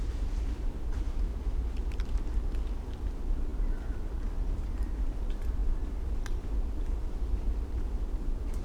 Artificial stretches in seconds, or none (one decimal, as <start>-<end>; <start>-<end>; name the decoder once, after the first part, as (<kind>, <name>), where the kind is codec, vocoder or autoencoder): 0.0-1.3 (vocoder, BigVGAN v2); 3.0-8.6